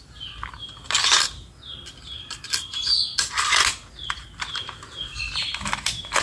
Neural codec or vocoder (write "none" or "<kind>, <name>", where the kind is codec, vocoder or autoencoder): none